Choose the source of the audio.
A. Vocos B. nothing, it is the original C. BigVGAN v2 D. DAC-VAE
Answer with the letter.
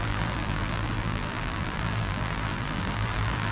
C